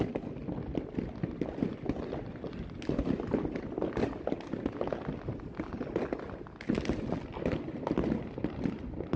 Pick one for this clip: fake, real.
real